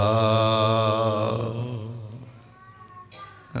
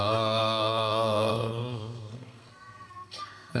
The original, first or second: first